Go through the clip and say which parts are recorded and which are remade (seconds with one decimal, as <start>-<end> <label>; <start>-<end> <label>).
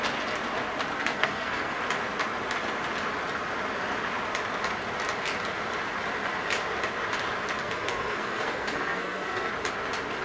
0.0-1.0 recorded; 1.0-1.8 remade; 1.8-7.6 recorded; 7.6-9.5 remade; 9.5-10.2 recorded